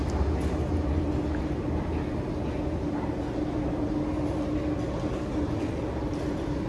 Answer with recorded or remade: recorded